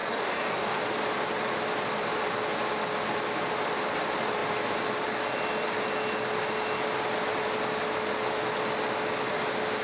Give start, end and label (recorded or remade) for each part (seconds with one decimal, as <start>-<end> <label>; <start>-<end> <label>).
0.0-0.8 remade; 0.8-9.8 recorded